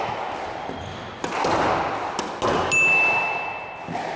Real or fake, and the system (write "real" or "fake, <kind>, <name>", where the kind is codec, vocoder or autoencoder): real